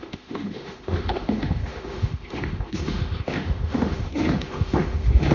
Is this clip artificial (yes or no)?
yes